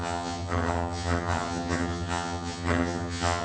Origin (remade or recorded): remade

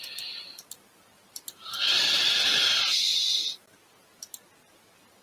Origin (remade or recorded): recorded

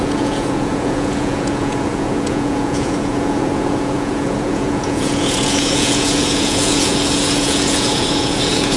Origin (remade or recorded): remade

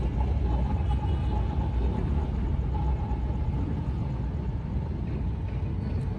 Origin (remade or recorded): recorded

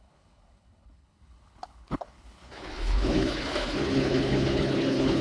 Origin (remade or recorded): remade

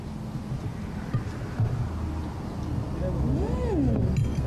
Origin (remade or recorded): recorded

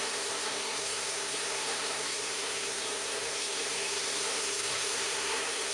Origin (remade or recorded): remade